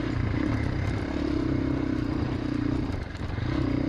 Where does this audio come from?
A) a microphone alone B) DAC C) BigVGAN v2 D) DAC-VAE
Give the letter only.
C